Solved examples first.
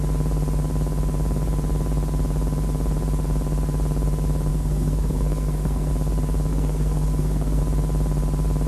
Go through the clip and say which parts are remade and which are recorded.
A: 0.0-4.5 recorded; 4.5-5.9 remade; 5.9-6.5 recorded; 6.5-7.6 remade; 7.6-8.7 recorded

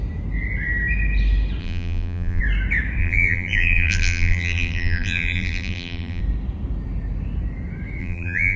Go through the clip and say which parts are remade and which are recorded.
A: 0.0-1.6 recorded; 1.6-2.4 remade; 2.4-3.0 recorded; 3.0-6.2 remade; 6.2-8.0 recorded; 8.0-8.6 remade

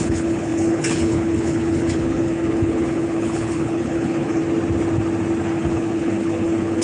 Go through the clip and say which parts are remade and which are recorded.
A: 0.0-4.4 remade; 4.4-5.4 recorded; 5.4-6.8 remade

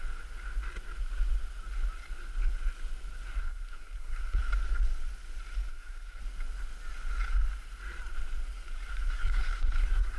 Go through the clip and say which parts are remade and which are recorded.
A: 0.0-3.4 recorded; 3.4-4.4 remade; 4.4-5.7 recorded; 5.7-6.2 remade; 6.2-8.9 recorded; 8.9-10.2 remade

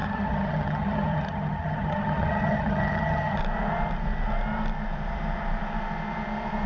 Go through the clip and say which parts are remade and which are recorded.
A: 0.0-3.4 remade; 3.4-6.7 recorded

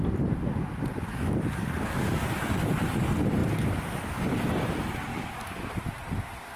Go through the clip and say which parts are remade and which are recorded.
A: 0.0-1.1 recorded; 1.1-2.4 remade; 2.4-5.1 recorded; 5.1-5.7 remade; 5.7-6.6 recorded

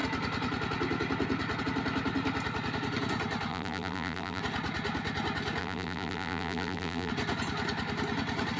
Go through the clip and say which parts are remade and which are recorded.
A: 0.0-3.5 recorded; 3.5-4.4 remade; 4.4-5.6 recorded; 5.6-7.1 remade; 7.1-8.6 recorded

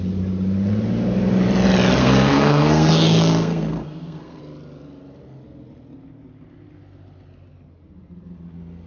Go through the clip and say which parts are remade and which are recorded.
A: 0.0-2.0 recorded; 2.0-4.4 remade; 4.4-8.9 recorded